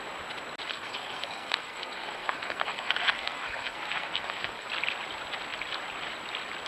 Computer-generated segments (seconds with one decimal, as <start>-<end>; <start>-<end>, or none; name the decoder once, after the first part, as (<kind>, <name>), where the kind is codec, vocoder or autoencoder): 0.7-4.7 (codec, SNAC)